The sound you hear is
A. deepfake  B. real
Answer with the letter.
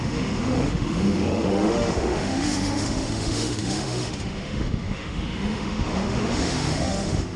A